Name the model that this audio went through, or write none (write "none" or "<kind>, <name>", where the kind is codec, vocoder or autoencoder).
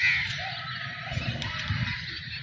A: none